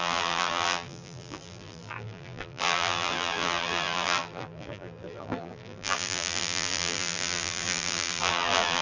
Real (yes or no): no